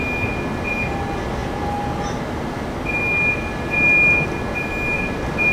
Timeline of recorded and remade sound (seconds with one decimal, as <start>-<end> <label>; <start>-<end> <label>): 0.0-5.5 recorded